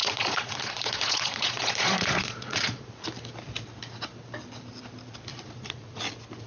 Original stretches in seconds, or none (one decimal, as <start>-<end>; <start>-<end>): 2.9-5.3; 6.0-6.5